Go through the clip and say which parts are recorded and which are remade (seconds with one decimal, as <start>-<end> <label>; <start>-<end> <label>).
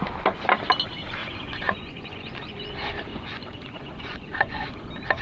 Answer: 0.0-1.2 recorded; 1.2-2.7 remade; 2.7-3.1 recorded; 3.1-4.8 remade; 4.8-5.2 recorded